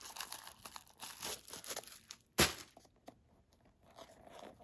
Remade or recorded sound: recorded